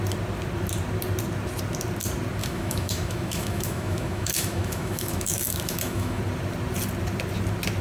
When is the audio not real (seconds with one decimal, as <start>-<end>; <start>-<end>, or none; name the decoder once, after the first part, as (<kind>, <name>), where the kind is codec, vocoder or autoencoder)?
2.4-6.2 (autoencoder, DAC-VAE)